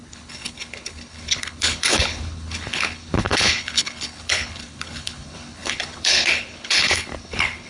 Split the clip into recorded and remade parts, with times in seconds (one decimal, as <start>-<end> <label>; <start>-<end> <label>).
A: 0.0-7.7 remade